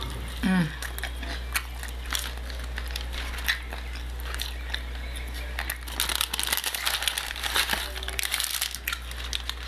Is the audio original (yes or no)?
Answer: yes